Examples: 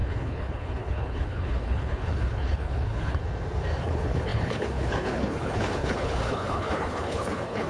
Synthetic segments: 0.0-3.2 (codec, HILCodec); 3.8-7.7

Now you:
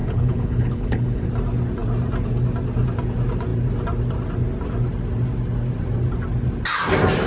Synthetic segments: 0.0-1.3 (codec, HILCodec)

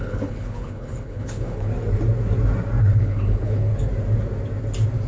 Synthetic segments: 0.0-1.7 (codec, HILCodec); 2.8-3.7

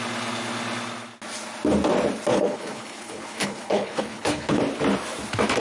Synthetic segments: 2.3-4.6 (codec, HILCodec)